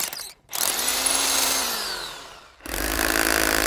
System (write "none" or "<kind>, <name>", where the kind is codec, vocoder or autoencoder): vocoder, BigVGAN v2